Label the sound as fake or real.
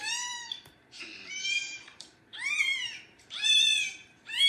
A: fake